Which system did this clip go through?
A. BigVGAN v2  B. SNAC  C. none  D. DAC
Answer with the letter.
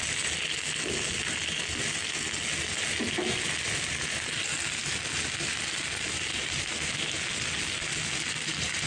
C